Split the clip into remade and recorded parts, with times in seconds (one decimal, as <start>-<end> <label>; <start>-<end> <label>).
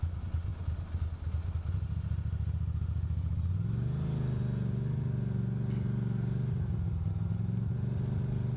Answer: 0.0-8.6 recorded